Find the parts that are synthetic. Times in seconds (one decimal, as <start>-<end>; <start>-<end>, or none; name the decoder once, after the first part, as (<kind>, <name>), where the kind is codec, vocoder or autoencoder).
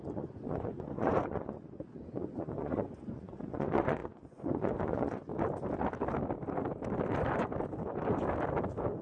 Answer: 0.0-5.3 (vocoder, Vocos)